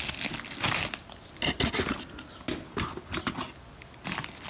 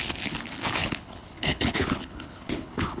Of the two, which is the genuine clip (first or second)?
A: first